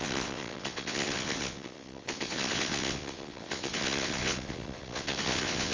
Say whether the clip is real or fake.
fake